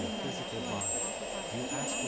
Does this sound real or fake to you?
real